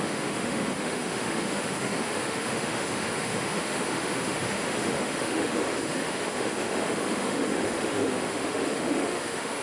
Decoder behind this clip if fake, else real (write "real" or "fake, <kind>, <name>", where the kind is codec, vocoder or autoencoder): fake, autoencoder, DAC-VAE